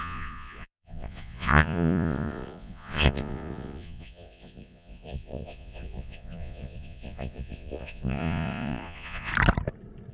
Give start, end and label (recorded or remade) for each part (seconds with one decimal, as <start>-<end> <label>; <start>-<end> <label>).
0.0-9.3 remade; 9.3-10.1 recorded